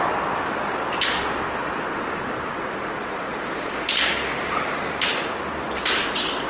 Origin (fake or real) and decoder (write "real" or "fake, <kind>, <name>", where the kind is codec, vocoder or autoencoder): real